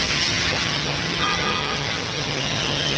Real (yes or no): no